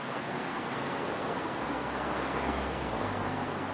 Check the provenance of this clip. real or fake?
fake